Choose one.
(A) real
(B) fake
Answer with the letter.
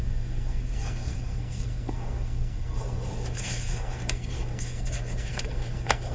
B